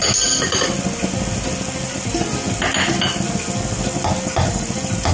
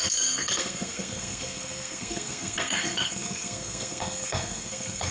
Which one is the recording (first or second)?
first